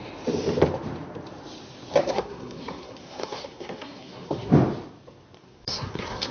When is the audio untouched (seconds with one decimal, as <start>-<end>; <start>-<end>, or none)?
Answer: 0.0-2.0; 4.5-5.4